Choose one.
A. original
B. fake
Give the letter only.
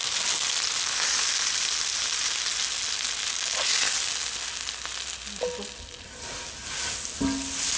A